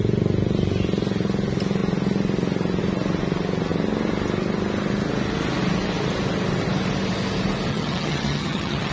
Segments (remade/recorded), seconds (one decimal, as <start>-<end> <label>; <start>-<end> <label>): 0.0-7.7 recorded; 7.7-8.9 remade

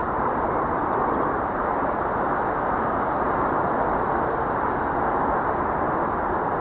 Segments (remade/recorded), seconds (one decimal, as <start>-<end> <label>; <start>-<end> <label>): 0.0-3.3 remade; 3.3-6.6 recorded

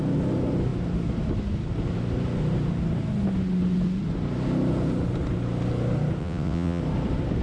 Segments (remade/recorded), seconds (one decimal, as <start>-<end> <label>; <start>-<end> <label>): 0.0-6.2 recorded; 6.2-6.8 remade; 6.8-7.4 recorded

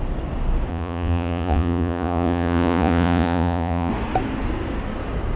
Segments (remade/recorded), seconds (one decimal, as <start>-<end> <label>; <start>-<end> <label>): 0.0-0.7 recorded; 0.7-3.9 remade; 3.9-5.4 recorded

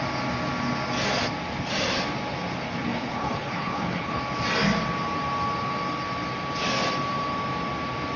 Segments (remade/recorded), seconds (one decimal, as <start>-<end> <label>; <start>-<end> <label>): 0.0-2.8 recorded; 2.8-4.2 remade; 4.2-8.2 recorded

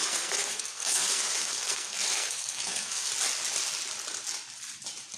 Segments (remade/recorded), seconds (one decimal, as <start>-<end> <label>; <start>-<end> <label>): 0.0-3.1 remade; 3.1-5.2 recorded

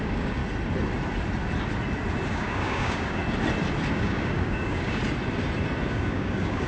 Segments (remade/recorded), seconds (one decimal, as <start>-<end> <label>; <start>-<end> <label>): 0.0-0.4 remade; 0.4-2.3 recorded; 2.3-3.2 remade; 3.2-3.9 recorded; 3.9-5.0 remade; 5.0-5.9 recorded; 5.9-6.7 remade